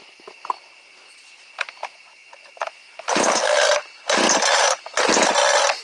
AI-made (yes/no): no